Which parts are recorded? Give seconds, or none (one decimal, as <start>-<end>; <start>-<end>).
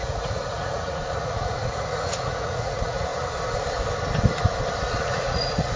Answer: 3.1-4.9